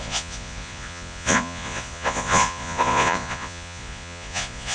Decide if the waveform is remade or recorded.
remade